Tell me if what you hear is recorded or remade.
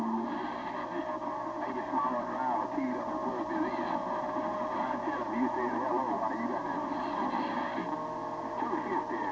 recorded